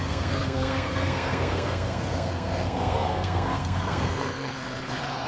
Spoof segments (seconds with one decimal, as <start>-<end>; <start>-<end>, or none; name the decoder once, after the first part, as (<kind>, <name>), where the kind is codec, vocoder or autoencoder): 0.0-5.3 (codec, SNAC)